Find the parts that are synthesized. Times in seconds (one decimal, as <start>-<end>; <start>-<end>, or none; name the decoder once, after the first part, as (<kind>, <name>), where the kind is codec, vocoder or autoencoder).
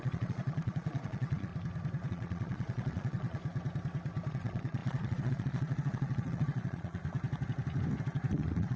0.0-1.5 (vocoder, Vocos); 2.1-3.4; 4.3-7.0; 8.3-8.8